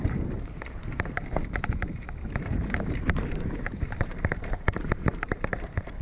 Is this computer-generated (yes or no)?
yes